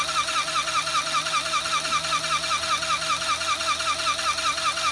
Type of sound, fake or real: real